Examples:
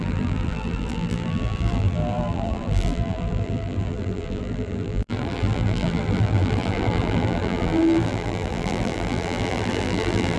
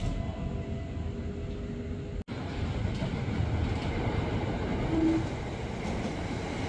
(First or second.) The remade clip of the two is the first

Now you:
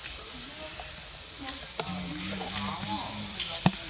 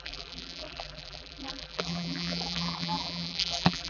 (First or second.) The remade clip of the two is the second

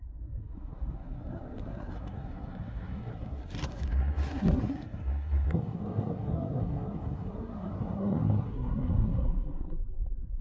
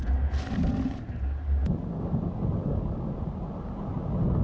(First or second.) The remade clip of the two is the first